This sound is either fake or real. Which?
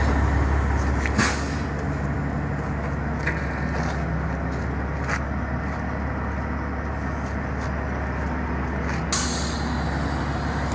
real